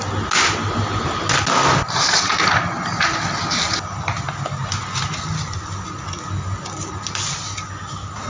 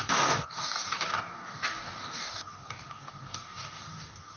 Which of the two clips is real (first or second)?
first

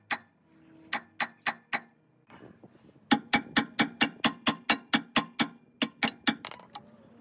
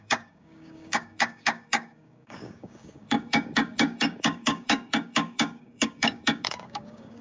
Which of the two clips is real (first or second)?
first